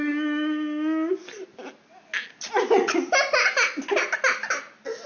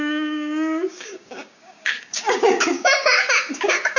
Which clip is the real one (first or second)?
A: first